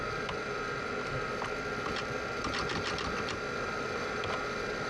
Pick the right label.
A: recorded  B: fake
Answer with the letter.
A